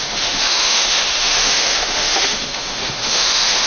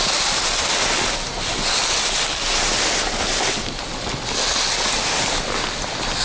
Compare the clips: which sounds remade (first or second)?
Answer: first